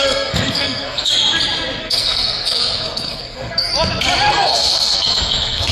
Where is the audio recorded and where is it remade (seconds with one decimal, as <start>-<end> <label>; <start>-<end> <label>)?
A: 0.0-1.1 remade; 1.1-1.8 recorded; 1.8-3.7 remade; 3.7-4.3 recorded; 4.3-5.7 remade